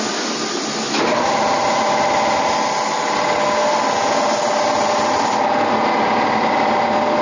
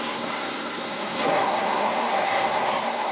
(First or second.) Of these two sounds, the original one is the first